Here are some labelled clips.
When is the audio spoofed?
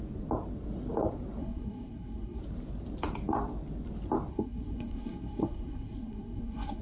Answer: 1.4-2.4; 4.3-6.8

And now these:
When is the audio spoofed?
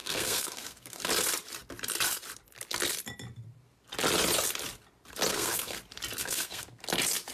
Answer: 0.0-1.0; 5.3-5.8; 6.2-6.8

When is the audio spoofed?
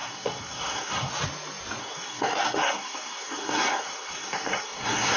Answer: 0.0-1.1; 1.8-5.2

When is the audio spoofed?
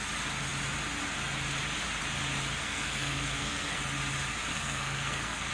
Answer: 2.6-3.8; 4.5-5.5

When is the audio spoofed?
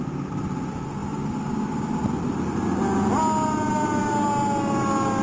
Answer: none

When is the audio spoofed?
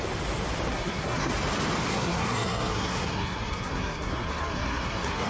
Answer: 0.7-1.3; 1.9-5.3